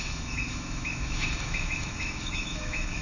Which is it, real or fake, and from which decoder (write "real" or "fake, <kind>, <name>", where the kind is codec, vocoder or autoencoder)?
fake, autoencoder, DAC-VAE